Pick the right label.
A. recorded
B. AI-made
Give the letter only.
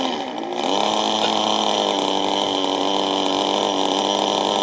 A